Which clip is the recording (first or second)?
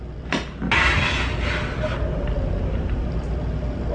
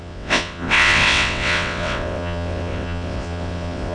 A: first